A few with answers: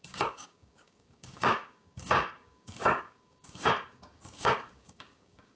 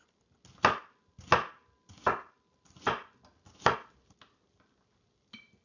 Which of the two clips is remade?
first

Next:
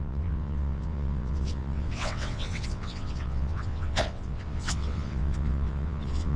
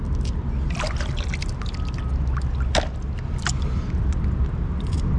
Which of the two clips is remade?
first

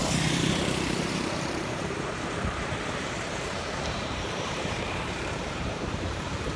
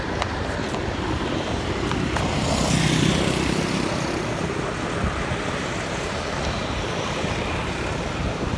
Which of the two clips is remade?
first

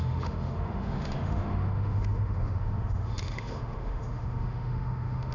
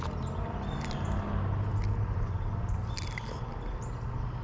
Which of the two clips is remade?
first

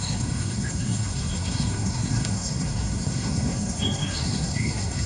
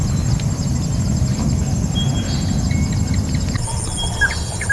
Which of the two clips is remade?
first